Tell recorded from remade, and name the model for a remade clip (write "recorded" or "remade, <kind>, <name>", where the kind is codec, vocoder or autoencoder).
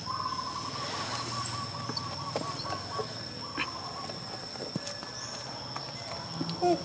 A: recorded